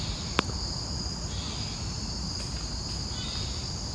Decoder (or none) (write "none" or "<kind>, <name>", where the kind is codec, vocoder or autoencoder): none